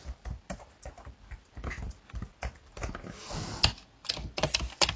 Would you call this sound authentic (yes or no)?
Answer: yes